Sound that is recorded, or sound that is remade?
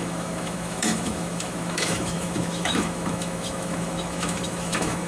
remade